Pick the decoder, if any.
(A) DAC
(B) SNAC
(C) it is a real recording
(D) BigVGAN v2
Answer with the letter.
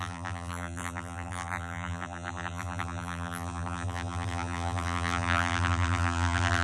D